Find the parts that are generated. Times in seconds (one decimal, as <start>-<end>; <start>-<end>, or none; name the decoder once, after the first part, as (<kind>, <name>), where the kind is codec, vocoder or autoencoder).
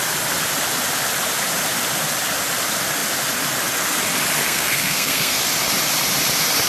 4.4-5.4 (codec, SNAC)